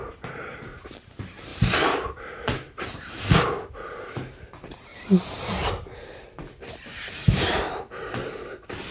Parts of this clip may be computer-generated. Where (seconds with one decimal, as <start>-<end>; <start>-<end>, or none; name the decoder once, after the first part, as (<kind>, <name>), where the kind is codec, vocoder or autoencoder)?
1.5-3.5 (vocoder, BigVGAN v2); 4.9-5.6; 6.9-7.7